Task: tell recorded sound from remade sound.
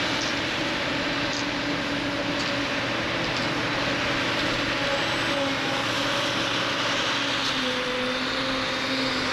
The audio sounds recorded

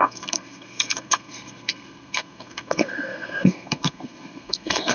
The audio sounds remade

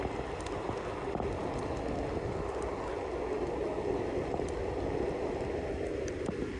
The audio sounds recorded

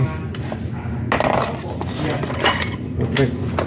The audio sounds recorded